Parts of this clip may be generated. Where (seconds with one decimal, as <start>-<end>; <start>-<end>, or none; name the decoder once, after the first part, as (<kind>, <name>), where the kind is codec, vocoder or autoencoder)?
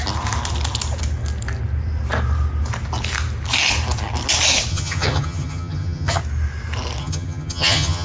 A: 4.7-6.2 (vocoder, HiFi-GAN); 7.0-8.0